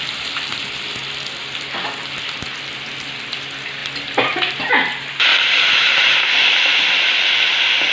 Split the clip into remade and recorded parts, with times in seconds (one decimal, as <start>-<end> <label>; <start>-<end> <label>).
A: 0.0-5.3 recorded; 5.3-7.0 remade; 7.0-7.9 recorded